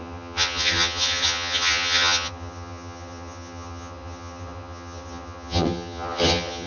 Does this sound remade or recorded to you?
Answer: remade